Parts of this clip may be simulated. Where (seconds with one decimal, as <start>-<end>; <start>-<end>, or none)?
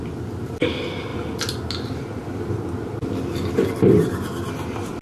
none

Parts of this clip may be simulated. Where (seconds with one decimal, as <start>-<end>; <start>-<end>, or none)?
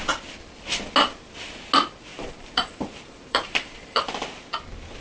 2.1-4.1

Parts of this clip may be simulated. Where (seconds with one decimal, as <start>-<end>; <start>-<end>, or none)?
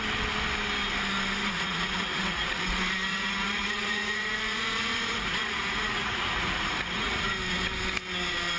1.4-2.6; 3.1-7.3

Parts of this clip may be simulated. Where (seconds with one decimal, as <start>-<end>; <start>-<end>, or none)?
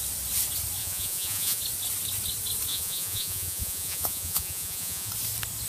0.8-1.6; 2.7-5.1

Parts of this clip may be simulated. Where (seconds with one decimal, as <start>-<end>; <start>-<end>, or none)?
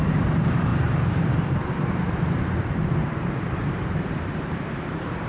0.0-5.3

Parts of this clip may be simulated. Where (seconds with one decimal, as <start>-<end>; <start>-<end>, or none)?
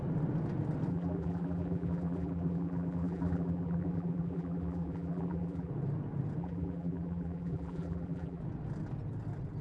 0.9-5.7; 6.4-8.4